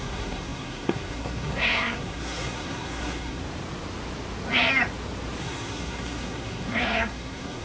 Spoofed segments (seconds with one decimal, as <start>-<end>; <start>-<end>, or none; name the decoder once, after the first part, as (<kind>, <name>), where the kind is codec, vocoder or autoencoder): 0.0-3.4 (codec, SNAC); 5.4-7.6